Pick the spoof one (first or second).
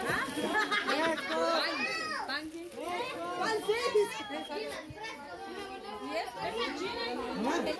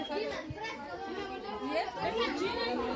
second